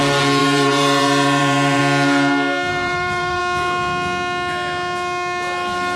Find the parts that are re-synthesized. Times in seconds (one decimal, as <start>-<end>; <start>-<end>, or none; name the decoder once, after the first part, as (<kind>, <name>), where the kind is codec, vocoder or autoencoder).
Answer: 0.4-1.8 (vocoder, BigVGAN v2); 2.7-3.4